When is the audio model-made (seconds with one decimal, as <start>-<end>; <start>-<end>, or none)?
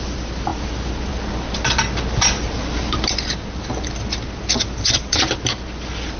none